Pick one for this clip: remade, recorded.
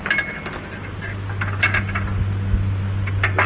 recorded